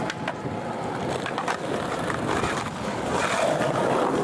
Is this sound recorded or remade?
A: recorded